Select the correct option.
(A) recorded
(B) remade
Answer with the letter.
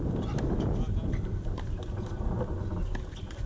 A